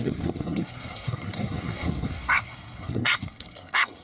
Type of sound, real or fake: fake